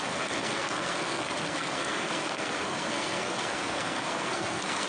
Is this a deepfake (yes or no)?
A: yes